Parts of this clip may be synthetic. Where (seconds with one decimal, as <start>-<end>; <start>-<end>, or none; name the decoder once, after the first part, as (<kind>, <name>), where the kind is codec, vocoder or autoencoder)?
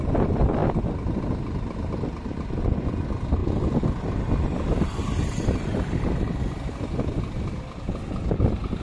none